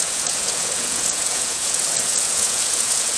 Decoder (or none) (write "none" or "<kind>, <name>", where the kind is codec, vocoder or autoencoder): vocoder, Vocos